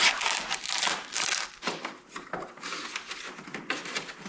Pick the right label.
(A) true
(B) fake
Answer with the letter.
A